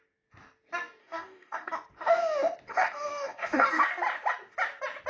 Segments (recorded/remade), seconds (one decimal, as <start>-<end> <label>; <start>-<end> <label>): 0.0-1.0 recorded; 1.0-1.7 remade; 1.7-2.7 recorded; 2.7-3.8 remade; 3.8-5.1 recorded